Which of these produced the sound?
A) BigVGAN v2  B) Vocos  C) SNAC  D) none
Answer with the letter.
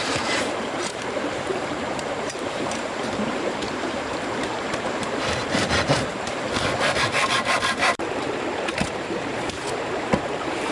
A